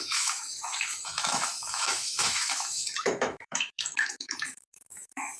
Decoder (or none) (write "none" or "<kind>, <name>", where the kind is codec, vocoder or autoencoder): autoencoder, DAC-VAE